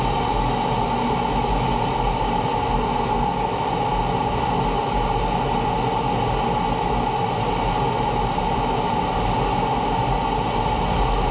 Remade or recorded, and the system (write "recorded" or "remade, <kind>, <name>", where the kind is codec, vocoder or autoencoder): recorded